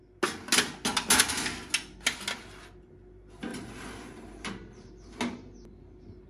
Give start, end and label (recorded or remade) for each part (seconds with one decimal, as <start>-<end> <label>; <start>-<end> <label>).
0.0-3.5 recorded; 3.5-4.9 remade; 4.9-6.3 recorded